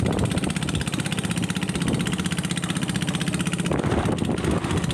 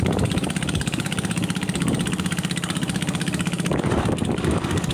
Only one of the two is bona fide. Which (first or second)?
first